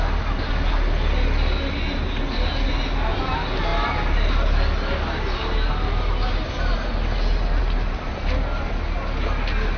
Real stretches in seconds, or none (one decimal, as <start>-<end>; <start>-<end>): 0.0-9.8